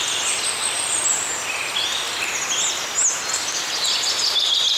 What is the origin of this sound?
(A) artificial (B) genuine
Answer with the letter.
B